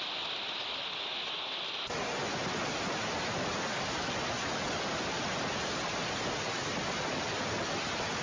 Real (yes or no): yes